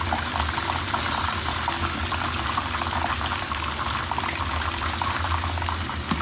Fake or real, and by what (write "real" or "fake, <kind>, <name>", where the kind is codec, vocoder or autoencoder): real